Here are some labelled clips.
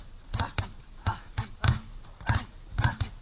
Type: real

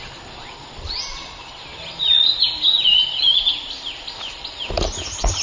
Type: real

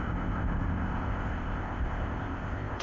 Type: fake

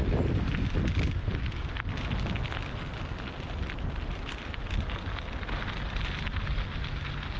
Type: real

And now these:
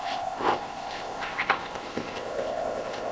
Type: fake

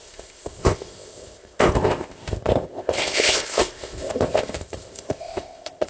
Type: fake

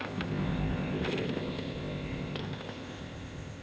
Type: fake